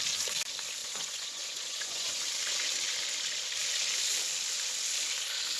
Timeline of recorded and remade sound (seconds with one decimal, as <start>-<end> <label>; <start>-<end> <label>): 0.0-0.8 recorded; 0.8-2.2 remade; 2.2-5.6 recorded